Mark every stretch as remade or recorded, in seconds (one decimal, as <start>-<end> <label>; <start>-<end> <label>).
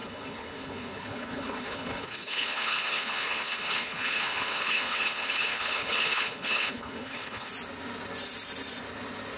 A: 0.0-7.5 remade; 7.5-9.4 recorded